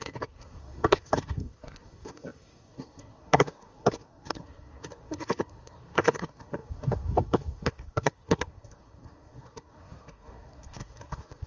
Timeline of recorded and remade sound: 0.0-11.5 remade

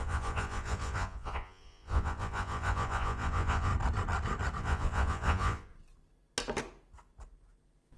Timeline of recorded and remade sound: 0.0-3.7 remade; 3.7-4.6 recorded; 4.6-5.7 remade; 5.7-8.0 recorded